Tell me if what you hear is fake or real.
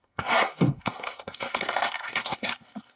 fake